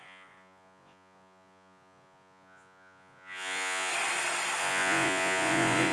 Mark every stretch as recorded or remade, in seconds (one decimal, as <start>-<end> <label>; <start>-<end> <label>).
0.0-3.9 remade; 3.9-4.6 recorded; 4.6-5.9 remade